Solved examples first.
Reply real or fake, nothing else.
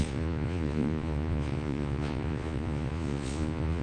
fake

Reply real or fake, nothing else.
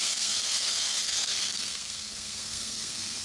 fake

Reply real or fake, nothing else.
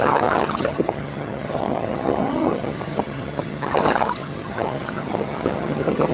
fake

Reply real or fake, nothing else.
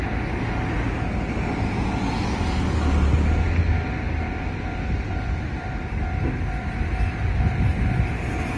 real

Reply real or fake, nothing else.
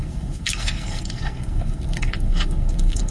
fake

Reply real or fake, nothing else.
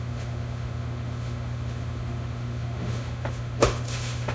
fake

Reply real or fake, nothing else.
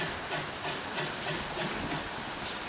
real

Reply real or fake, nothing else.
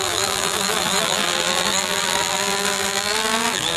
fake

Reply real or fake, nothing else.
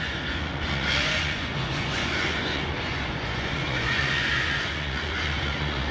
fake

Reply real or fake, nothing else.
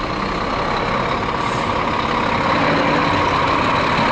real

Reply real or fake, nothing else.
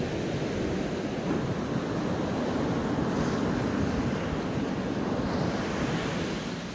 real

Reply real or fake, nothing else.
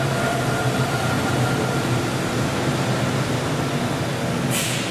real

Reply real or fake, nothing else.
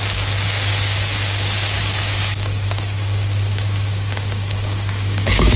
fake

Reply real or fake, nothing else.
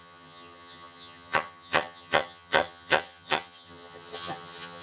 fake